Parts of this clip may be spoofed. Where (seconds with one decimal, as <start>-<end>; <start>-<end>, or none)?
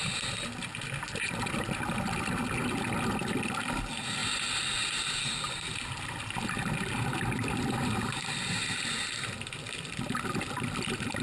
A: 4.2-6.7